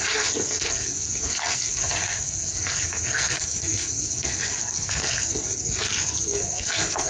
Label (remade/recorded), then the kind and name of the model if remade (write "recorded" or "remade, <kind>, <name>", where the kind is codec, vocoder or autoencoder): remade, codec, SNAC